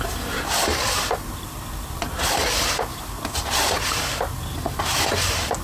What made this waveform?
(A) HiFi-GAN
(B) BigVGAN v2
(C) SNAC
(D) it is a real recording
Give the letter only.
D